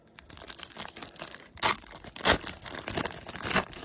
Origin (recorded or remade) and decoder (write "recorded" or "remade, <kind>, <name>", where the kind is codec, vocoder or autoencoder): recorded